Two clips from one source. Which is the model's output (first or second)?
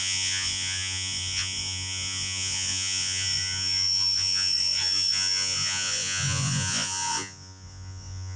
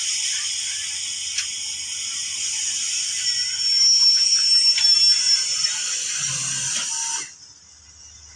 first